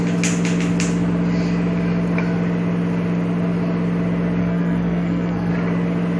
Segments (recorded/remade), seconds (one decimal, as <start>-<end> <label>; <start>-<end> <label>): 0.0-4.4 recorded; 4.4-5.5 remade; 5.5-6.2 recorded